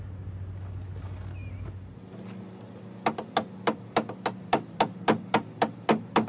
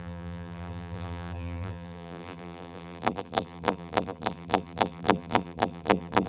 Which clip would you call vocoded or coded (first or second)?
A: second